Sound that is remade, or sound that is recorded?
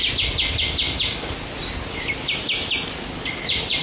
recorded